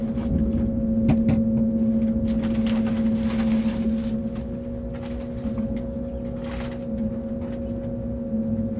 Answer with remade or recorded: recorded